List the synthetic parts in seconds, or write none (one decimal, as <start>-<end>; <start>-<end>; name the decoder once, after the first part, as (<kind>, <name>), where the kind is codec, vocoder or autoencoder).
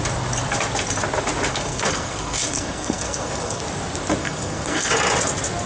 1.5-3.6 (codec, SNAC); 4.2-4.9